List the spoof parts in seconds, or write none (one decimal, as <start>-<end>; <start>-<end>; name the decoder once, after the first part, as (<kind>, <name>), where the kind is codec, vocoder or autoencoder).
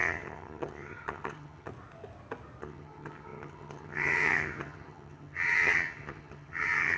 0.0-1.7 (vocoder, HiFi-GAN); 2.6-7.0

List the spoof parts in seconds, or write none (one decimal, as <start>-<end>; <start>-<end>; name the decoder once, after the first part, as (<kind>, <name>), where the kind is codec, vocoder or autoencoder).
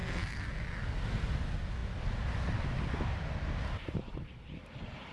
0.0-0.5 (codec, SNAC)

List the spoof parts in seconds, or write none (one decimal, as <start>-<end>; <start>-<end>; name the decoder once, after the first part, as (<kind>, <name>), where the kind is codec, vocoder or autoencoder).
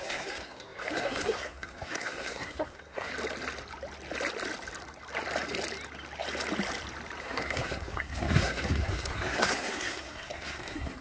0.0-3.1 (codec, SNAC); 7.2-11.0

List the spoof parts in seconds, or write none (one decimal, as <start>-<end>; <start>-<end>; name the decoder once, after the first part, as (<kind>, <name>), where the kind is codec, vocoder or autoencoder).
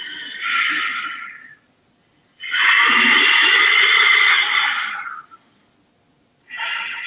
none